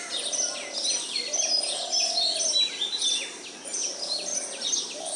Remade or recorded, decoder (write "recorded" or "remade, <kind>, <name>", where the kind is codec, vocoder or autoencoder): recorded